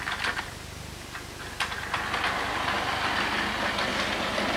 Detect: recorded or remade recorded